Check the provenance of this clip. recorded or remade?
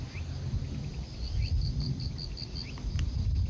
recorded